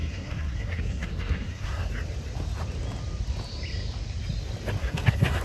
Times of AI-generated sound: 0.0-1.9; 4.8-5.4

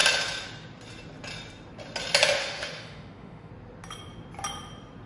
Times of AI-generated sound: 2.4-3.5

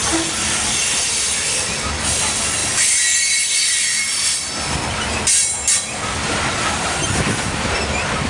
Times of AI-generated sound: none

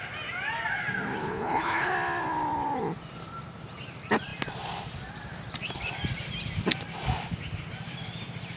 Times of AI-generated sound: 1.2-1.9

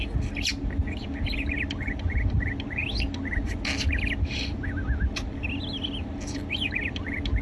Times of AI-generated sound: none